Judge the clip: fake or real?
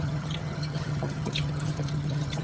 fake